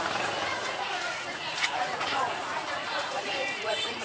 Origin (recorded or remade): remade